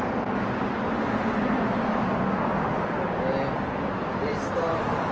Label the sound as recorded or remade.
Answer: recorded